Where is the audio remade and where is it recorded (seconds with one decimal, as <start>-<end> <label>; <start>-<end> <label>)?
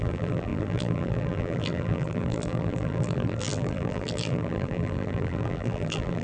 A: 0.0-6.2 remade